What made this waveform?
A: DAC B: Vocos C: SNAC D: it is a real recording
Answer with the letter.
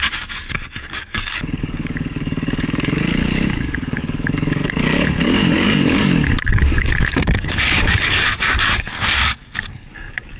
A